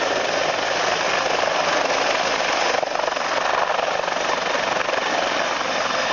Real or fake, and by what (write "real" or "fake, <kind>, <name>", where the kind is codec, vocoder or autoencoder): real